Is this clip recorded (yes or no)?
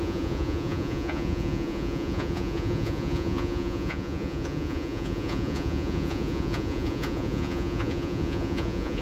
no